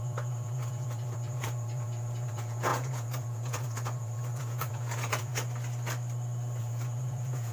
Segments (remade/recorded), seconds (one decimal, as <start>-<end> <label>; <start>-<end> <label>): 0.0-5.3 remade; 5.3-6.6 recorded; 6.6-7.5 remade